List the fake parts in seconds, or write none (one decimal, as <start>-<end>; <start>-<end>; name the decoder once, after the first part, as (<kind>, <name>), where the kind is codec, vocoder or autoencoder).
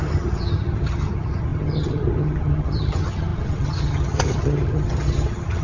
0.0-5.6 (vocoder, HiFi-GAN)